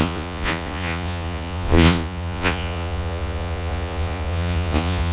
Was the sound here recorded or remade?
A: remade